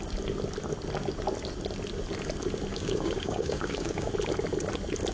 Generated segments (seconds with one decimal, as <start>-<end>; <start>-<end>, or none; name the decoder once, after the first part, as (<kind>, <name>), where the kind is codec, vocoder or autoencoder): 2.7-4.1 (codec, DAC)